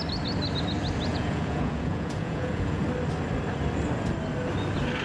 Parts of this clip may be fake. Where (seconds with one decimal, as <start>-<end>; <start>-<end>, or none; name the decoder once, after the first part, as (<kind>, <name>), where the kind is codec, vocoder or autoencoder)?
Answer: 1.1-2.8 (vocoder, Vocos)

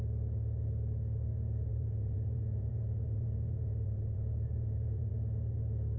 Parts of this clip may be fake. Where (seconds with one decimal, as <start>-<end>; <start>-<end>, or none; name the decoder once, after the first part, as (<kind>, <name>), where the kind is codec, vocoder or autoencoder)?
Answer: 1.7-5.1 (vocoder, Vocos)

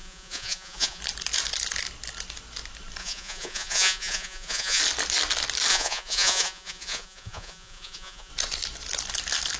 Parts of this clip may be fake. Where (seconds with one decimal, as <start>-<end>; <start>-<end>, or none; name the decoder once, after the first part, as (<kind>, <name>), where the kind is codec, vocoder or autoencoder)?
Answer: 0.0-1.0 (vocoder, Vocos); 3.0-4.8; 5.7-8.3